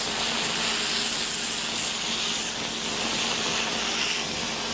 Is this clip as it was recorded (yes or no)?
yes